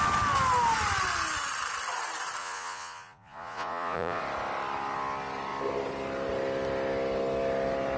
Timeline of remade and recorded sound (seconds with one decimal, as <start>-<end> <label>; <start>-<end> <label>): 0.0-2.4 recorded; 2.4-4.2 remade; 4.2-8.0 recorded